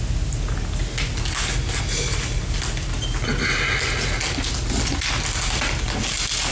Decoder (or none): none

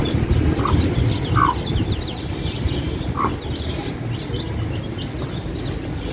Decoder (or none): none